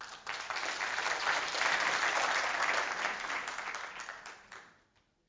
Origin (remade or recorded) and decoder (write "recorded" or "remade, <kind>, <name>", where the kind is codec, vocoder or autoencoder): recorded